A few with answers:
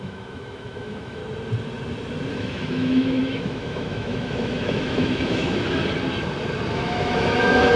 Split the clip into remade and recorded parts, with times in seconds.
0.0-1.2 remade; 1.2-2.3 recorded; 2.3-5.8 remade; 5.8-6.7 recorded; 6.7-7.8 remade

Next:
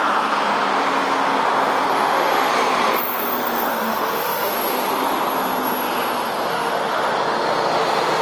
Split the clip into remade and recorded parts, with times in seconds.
0.0-1.9 recorded; 1.9-2.5 remade; 2.5-3.7 recorded; 3.7-4.5 remade; 4.5-6.5 recorded; 6.5-7.1 remade; 7.1-8.2 recorded

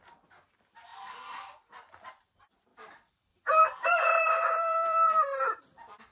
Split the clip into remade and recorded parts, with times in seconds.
0.0-0.9 recorded; 0.9-2.1 remade; 2.1-2.7 recorded; 2.7-5.6 remade; 5.6-6.1 recorded